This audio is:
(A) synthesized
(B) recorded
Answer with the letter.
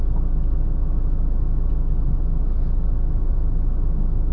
B